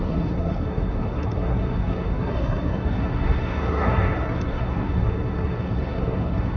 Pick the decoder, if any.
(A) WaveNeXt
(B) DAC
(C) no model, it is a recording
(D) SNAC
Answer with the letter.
D